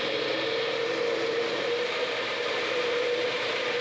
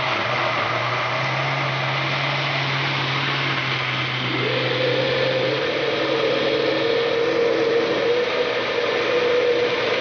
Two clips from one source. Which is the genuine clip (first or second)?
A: second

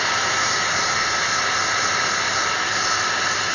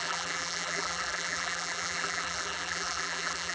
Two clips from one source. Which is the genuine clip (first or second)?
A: first